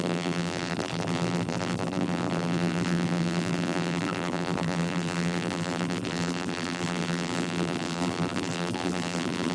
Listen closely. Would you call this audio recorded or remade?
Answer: remade